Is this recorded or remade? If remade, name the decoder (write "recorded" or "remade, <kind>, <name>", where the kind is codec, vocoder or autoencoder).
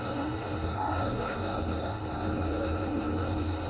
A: remade, codec, SNAC